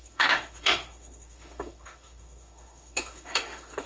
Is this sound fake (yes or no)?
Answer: yes